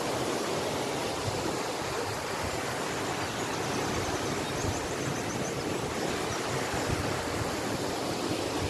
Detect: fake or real real